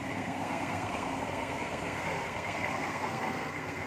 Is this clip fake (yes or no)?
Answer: yes